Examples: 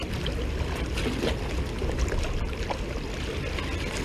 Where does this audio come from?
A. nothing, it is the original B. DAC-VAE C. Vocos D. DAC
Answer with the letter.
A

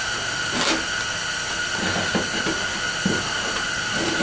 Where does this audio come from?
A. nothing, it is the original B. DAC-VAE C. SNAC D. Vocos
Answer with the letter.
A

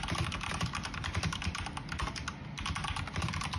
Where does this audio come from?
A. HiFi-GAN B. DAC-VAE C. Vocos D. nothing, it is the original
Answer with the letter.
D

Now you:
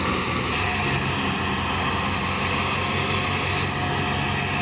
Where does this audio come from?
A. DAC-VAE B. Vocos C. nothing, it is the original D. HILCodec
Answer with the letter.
C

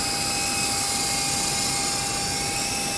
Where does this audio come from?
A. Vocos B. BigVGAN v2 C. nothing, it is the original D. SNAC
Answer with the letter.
C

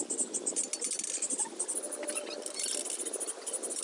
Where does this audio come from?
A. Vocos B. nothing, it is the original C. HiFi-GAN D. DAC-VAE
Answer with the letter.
B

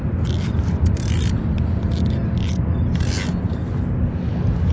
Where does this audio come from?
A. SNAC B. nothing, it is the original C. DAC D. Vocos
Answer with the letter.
B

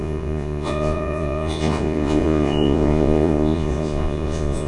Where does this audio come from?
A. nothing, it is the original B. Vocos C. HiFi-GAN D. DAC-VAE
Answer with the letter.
B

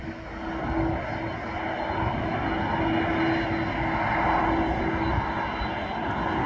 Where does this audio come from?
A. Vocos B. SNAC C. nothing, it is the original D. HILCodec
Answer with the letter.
C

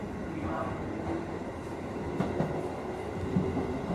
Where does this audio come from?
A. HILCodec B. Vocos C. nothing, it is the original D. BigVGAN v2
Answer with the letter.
C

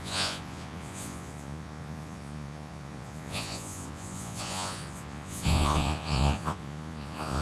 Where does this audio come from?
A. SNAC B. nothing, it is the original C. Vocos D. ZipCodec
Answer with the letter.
C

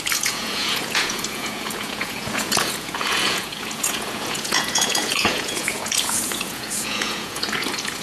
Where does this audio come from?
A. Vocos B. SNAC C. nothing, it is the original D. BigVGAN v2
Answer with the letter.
A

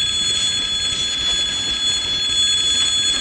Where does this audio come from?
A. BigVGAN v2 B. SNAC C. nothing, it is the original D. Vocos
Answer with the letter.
C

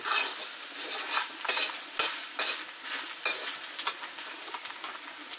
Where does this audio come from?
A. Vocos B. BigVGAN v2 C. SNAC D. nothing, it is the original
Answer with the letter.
D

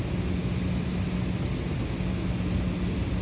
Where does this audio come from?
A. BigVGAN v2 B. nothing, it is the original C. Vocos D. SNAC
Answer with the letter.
B